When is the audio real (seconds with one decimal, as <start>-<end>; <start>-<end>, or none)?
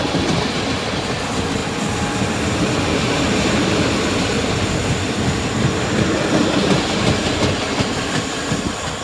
0.0-9.0